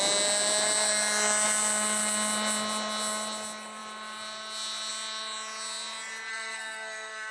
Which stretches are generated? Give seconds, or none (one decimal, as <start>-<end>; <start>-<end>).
6.3-7.3